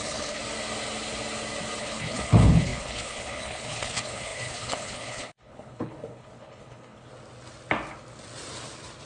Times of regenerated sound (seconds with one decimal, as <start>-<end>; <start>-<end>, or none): 0.0-0.4; 1.8-7.1